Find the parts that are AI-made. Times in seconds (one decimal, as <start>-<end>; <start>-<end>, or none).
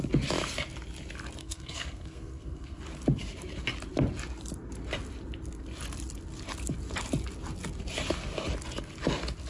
1.4-2.8